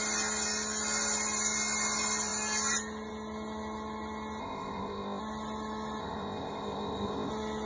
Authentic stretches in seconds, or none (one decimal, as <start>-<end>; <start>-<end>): 0.0-4.4; 5.2-6.0; 7.3-7.7